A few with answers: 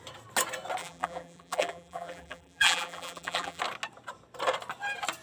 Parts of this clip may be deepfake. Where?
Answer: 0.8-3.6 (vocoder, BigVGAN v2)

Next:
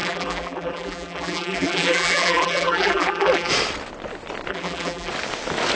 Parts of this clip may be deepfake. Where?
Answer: 0.0-3.5 (vocoder, BigVGAN v2); 4.5-5.1

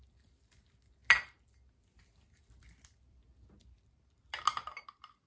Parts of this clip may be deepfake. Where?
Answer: none

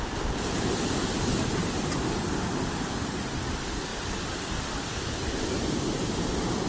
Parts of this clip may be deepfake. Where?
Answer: none

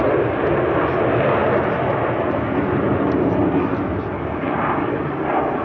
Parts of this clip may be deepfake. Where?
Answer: none